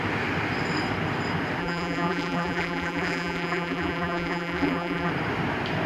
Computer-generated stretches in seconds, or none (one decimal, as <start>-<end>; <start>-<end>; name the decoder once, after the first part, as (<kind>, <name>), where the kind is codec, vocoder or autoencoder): 1.6-5.1 (vocoder, BigVGAN v2)